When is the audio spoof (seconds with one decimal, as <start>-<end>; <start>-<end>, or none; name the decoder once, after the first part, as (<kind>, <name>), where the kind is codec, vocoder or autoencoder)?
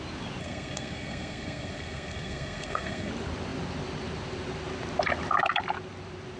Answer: 0.4-3.1 (codec, SNAC)